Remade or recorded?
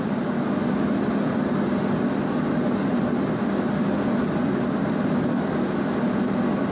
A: recorded